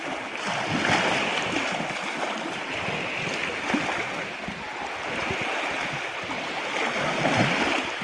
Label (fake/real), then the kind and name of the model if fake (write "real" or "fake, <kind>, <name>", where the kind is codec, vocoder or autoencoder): real